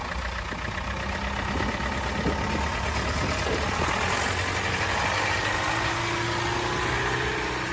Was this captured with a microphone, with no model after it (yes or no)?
yes